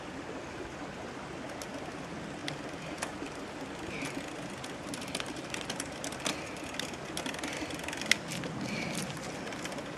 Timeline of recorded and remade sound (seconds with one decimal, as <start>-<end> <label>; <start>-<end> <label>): 0.0-10.0 recorded